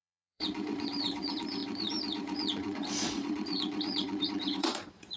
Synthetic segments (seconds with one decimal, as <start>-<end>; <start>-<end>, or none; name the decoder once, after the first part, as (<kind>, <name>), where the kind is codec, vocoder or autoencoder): 0.0-5.2 (vocoder, Vocos)